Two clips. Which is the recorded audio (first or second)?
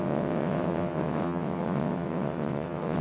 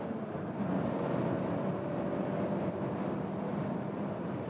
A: second